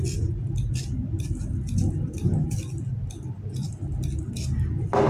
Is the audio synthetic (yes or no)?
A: no